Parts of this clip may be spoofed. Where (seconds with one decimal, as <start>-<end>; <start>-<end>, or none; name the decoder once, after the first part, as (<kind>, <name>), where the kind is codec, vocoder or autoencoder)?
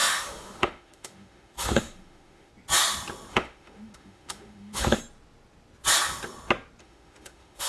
0.0-2.5 (autoencoder, DAC-VAE); 3.3-5.0; 6.8-7.7